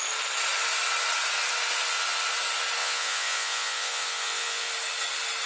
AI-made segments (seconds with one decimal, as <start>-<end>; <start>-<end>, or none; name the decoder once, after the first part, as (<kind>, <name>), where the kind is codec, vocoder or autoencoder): 2.8-4.7 (vocoder, Vocos)